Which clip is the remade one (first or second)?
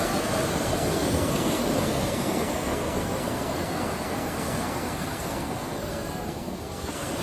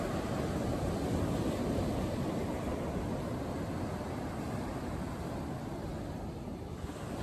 first